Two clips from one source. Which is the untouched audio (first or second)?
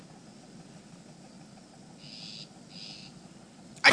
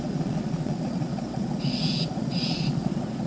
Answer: first